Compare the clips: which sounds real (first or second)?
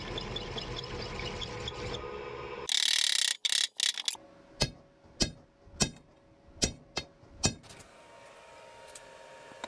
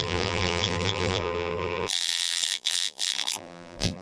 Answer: first